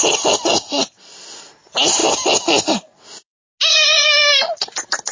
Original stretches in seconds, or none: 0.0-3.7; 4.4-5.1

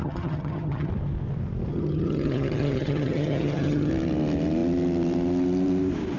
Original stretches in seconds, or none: 0.9-1.7; 3.9-6.2